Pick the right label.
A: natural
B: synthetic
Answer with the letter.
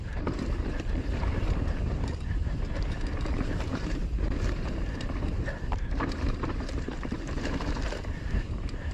B